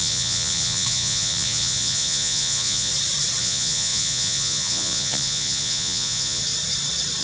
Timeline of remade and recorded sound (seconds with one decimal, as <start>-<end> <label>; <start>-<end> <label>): 0.0-2.9 remade; 2.9-3.4 recorded; 3.4-6.4 remade; 6.4-7.2 recorded